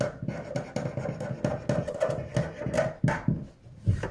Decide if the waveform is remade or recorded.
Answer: recorded